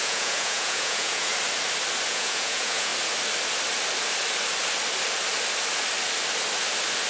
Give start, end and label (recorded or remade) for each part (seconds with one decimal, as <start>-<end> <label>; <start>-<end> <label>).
0.0-1.3 remade; 1.3-2.1 recorded; 2.1-2.9 remade; 2.9-7.1 recorded